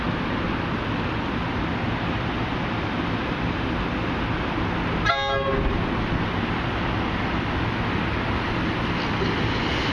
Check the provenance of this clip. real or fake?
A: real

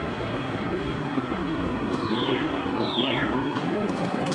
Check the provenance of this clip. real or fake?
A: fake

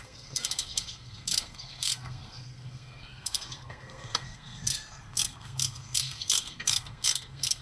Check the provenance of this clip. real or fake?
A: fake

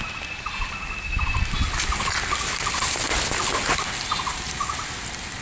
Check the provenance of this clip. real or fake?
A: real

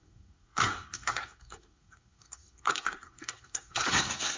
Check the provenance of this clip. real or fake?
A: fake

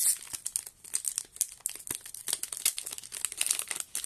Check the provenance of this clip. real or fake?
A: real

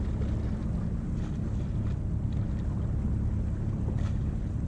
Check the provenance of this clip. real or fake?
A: real